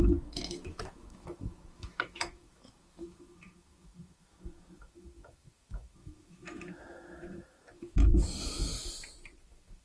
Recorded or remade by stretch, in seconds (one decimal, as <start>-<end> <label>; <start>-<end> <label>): 0.0-8.7 remade; 8.7-9.4 recorded; 9.4-9.8 remade